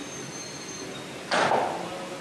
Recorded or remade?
recorded